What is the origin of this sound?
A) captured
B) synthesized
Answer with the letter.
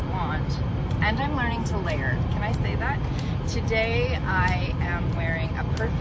A